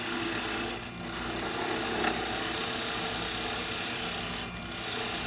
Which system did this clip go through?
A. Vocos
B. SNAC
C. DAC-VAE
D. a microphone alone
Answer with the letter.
D